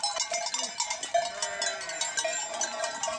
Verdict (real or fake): real